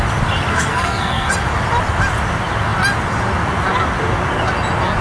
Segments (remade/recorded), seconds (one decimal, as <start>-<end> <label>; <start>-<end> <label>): 0.0-0.5 recorded; 0.5-1.3 remade; 1.3-5.0 recorded